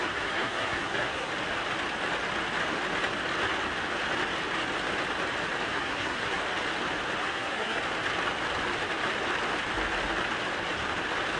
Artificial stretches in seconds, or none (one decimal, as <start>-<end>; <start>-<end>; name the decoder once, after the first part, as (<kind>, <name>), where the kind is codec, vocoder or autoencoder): 0.0-1.3 (codec, SNAC); 5.7-6.4; 7.2-7.8